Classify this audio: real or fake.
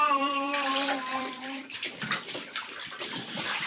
fake